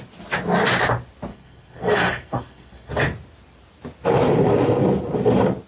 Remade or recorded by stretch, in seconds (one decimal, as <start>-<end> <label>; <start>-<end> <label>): 0.0-1.3 recorded; 1.3-2.9 remade; 2.9-5.7 recorded